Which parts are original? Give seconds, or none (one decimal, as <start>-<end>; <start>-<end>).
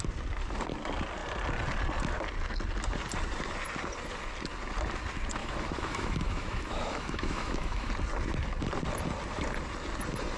0.0-5.4; 7.9-10.4